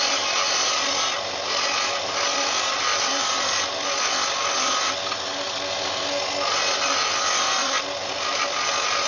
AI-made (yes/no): no